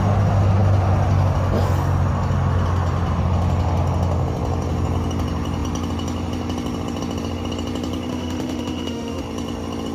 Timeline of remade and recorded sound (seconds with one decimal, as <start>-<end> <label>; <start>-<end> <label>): 0.0-8.1 recorded; 8.1-9.2 remade; 9.2-9.9 recorded

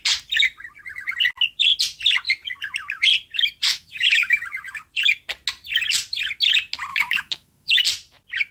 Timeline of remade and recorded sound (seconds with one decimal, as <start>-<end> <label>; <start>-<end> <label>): 0.0-3.7 recorded; 3.7-4.4 remade; 4.4-6.9 recorded; 6.9-7.8 remade; 7.8-8.5 recorded

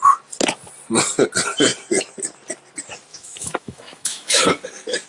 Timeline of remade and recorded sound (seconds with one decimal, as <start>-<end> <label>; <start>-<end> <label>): 0.0-3.1 recorded; 3.1-4.4 remade; 4.4-5.1 recorded

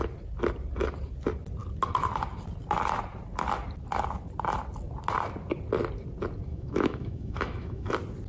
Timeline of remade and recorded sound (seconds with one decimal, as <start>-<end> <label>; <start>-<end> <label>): 0.0-6.5 recorded; 6.5-7.9 remade; 7.9-8.3 recorded

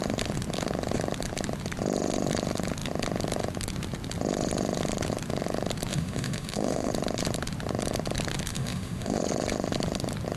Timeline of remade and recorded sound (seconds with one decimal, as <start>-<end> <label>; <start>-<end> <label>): 0.0-5.9 recorded; 5.9-6.9 remade; 6.9-8.5 recorded; 8.5-9.2 remade; 9.2-10.4 recorded

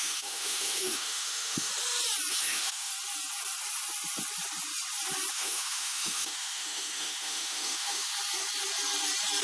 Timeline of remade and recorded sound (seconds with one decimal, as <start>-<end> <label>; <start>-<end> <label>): 0.0-1.7 remade; 1.7-2.3 recorded; 2.3-2.9 remade; 2.9-5.3 recorded; 5.3-8.1 remade; 8.1-9.4 recorded